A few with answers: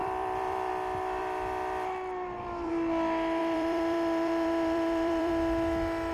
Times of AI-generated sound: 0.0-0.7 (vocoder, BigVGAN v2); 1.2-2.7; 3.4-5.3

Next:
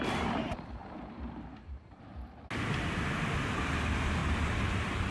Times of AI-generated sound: 0.8-2.0 (vocoder, BigVGAN v2); 4.2-5.1

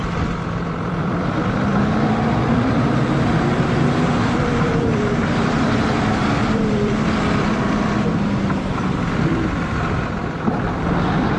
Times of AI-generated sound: 0.0-11.4 (vocoder, BigVGAN v2)

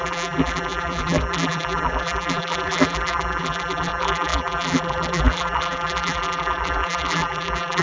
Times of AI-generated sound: 0.0-7.8 (vocoder, BigVGAN v2)

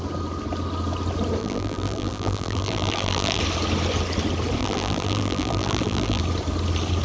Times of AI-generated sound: 1.4-3.4 (vocoder, BigVGAN v2); 4.6-6.2